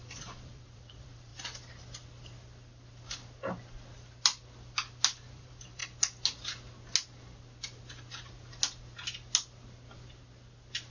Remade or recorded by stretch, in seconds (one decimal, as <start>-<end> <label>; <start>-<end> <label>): 0.0-1.3 remade; 1.3-5.3 recorded; 5.3-5.8 remade; 5.8-10.9 recorded

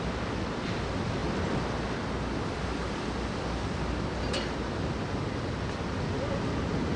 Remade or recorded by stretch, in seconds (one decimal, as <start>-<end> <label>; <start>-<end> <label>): 0.0-7.0 recorded